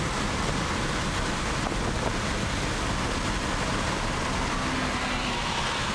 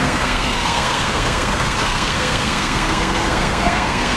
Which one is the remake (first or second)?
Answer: second